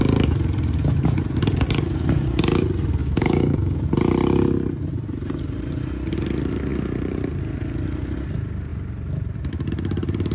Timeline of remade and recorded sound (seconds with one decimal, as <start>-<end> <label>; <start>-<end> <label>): 0.0-3.0 recorded; 3.0-3.8 remade; 3.8-10.3 recorded